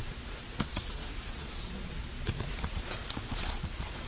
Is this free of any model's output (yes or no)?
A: no